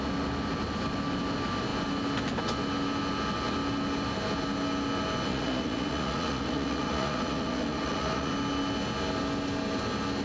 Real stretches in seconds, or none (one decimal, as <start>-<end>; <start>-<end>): 0.0-5.3; 8.3-10.2